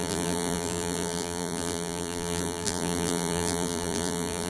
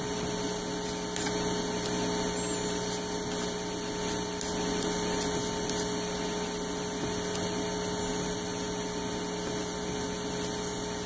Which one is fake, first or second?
first